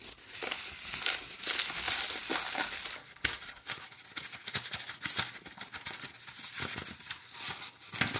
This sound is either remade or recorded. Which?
recorded